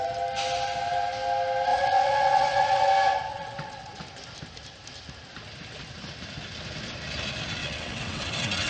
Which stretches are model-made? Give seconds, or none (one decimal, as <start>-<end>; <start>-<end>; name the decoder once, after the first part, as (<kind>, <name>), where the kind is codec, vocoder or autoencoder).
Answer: 1.7-2.9 (vocoder, WaveNeXt); 3.3-4.0; 7.6-8.7